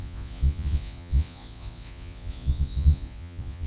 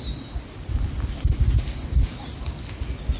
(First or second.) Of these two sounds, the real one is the second